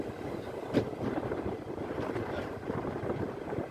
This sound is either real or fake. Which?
fake